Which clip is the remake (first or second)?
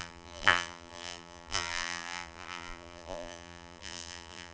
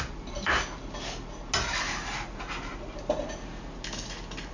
first